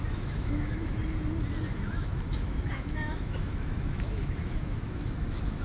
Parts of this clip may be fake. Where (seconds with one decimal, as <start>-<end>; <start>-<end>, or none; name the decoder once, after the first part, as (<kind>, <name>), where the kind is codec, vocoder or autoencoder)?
0.0-1.0 (autoencoder, DAC-VAE); 1.6-5.6